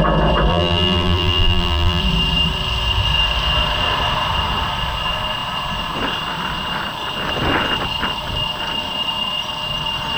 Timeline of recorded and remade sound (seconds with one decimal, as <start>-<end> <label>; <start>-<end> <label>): 0.0-0.5 recorded; 0.5-2.0 remade; 2.0-10.2 recorded